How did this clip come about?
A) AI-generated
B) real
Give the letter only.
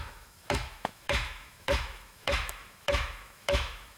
A